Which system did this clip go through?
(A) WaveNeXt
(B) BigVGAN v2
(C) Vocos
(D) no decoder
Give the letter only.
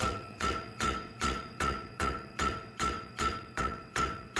A